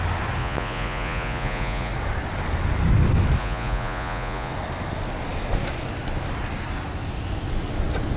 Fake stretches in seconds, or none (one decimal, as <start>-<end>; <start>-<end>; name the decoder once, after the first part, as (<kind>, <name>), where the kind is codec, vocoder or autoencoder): 0.4-1.9 (vocoder, Vocos); 3.4-4.5

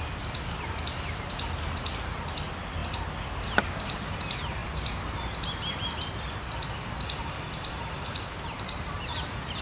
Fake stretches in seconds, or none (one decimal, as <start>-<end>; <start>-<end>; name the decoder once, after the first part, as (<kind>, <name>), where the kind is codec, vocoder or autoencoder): none

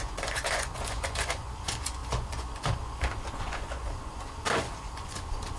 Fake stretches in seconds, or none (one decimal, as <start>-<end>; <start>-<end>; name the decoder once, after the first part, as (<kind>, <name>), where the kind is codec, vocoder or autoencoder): 0.0-5.6 (vocoder, Vocos)

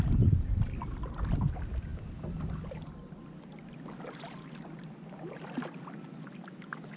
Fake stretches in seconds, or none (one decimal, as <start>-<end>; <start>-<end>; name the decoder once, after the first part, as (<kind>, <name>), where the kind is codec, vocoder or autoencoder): none